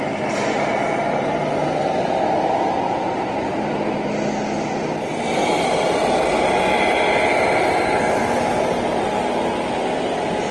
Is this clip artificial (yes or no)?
no